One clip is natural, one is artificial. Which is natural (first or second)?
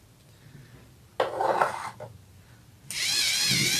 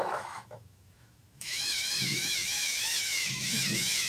first